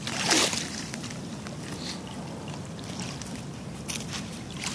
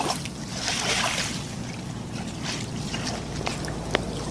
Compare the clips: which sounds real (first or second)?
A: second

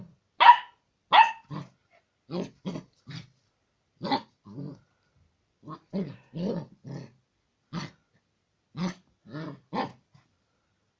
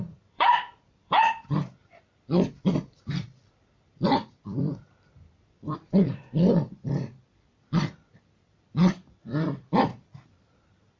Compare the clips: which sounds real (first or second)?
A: first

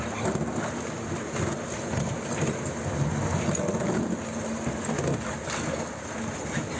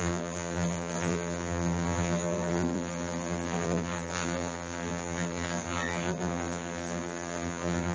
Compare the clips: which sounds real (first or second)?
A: first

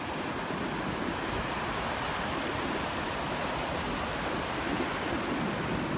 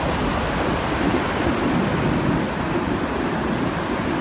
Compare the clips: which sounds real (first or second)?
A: first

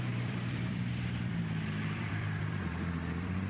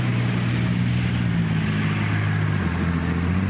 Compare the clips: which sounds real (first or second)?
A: second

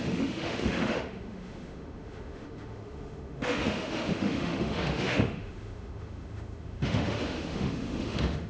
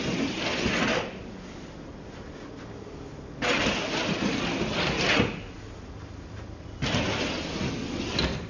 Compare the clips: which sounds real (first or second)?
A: second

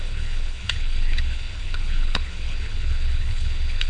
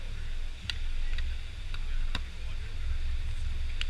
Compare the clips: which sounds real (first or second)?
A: second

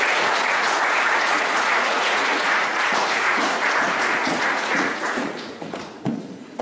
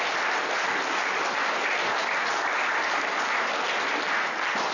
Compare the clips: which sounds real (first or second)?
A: second